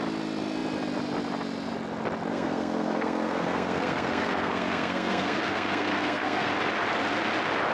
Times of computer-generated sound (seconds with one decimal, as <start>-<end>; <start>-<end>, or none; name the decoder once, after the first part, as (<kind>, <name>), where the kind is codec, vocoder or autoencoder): 2.3-6.5 (codec, SNAC)